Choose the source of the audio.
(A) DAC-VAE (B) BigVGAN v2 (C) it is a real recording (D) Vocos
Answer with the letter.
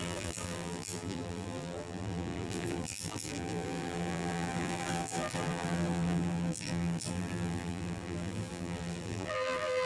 B